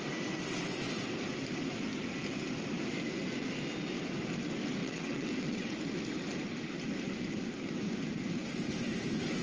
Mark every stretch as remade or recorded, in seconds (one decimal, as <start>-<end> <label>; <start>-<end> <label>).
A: 0.0-4.8 recorded; 4.8-5.7 remade; 5.7-9.4 recorded